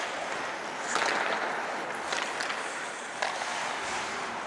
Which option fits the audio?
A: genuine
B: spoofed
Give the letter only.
A